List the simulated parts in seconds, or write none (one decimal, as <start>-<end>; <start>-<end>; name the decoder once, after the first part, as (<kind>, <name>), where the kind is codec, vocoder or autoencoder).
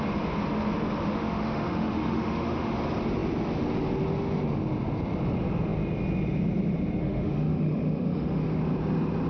1.1-2.8 (autoencoder, DAC-VAE); 7.0-8.6